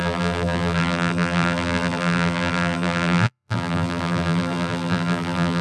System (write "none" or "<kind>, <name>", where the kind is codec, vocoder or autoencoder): vocoder, BigVGAN v2